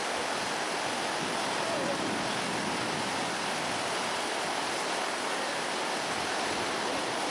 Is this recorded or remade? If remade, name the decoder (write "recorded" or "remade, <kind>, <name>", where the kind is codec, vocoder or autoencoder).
recorded